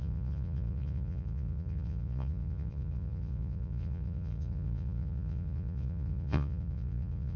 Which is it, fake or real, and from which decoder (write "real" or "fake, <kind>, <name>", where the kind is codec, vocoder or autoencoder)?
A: fake, vocoder, Vocos